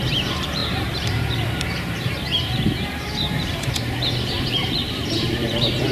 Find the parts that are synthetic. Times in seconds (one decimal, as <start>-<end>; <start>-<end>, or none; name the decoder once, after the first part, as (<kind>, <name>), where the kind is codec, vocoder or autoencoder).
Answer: 0.0-5.9 (vocoder, BigVGAN v2)